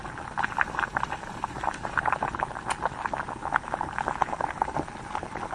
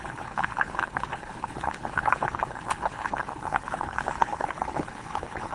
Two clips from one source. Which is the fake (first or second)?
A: second